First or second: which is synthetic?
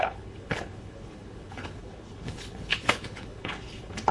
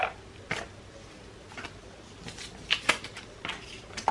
first